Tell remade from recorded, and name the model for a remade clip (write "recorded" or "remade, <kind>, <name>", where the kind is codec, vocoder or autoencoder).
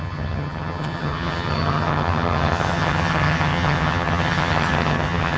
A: remade, vocoder, HiFi-GAN